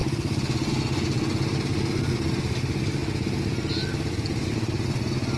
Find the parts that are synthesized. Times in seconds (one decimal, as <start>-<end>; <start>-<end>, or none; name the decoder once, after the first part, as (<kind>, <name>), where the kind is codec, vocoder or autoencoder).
none